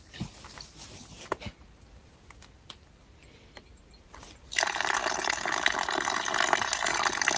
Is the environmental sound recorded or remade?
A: recorded